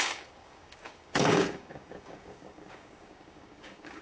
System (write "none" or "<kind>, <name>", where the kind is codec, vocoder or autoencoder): codec, DAC